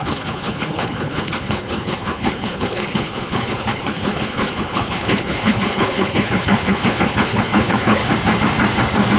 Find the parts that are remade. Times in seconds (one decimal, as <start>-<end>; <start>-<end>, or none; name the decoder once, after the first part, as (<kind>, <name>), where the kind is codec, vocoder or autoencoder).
0.0-8.0 (codec, HILCodec)